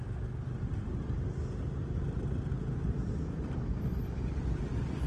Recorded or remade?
recorded